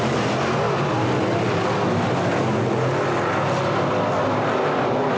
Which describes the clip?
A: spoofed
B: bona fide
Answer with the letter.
B